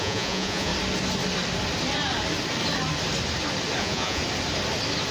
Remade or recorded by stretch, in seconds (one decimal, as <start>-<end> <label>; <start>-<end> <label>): 0.0-0.7 remade; 0.7-3.8 recorded; 3.8-4.2 remade; 4.2-5.1 recorded